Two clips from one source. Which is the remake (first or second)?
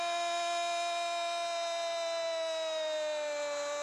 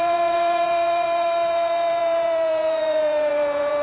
second